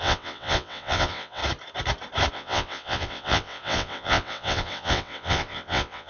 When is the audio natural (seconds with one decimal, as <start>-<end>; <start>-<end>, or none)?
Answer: 1.4-2.3